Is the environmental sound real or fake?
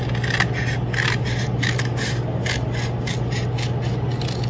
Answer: real